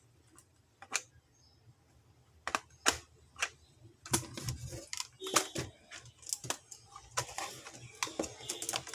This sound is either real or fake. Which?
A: real